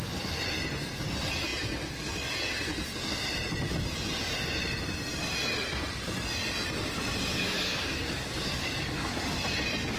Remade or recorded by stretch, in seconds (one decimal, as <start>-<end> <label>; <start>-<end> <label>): 0.0-7.3 recorded; 7.3-9.1 remade; 9.1-10.0 recorded